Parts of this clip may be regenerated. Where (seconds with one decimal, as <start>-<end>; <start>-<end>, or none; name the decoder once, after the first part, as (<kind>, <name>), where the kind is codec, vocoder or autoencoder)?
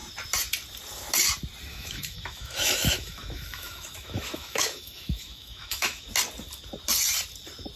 1.7-6.1 (autoencoder, DAC-VAE)